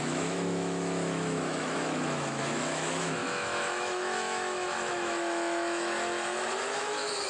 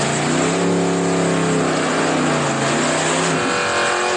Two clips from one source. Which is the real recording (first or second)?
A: second